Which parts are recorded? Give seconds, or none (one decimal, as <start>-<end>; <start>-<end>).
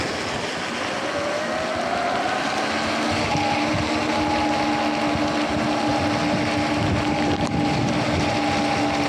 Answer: 0.0-9.1